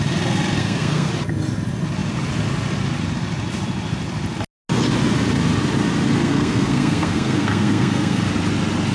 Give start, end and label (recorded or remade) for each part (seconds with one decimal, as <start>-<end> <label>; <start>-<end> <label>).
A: 0.0-0.6 recorded; 0.6-1.1 remade; 1.1-6.2 recorded; 6.2-8.3 remade; 8.3-8.9 recorded